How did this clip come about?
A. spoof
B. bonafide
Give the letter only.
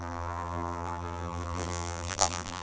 A